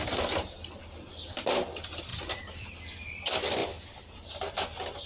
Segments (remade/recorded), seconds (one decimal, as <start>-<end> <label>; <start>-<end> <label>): 0.0-2.1 recorded; 2.1-2.9 remade; 2.9-3.6 recorded; 3.6-4.3 remade; 4.3-5.1 recorded